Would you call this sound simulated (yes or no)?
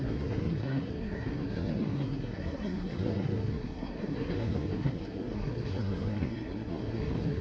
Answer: yes